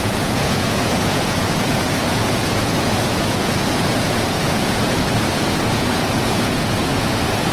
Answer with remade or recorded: remade